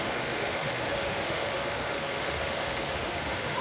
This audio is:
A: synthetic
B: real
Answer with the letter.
A